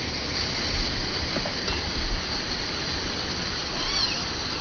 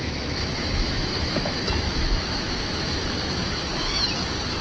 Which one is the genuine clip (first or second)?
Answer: first